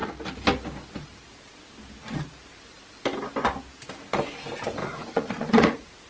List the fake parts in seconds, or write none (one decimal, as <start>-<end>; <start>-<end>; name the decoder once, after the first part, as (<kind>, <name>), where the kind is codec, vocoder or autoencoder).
4.8-6.1 (vocoder, Vocos)